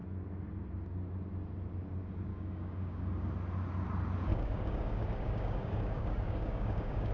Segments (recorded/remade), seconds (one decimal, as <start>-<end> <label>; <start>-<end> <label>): 0.0-2.3 recorded; 2.3-3.3 remade; 3.3-4.3 recorded; 4.3-7.1 remade